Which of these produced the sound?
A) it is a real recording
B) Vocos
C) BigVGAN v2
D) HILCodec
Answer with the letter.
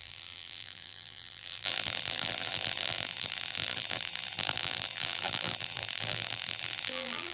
C